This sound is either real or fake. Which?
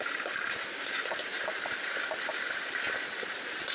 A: real